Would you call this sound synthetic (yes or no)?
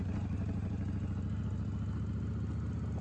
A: no